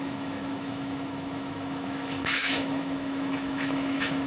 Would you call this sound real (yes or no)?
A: no